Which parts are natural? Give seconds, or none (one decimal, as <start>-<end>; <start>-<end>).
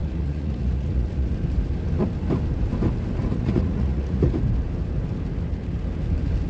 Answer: 1.3-3.3; 4.3-6.5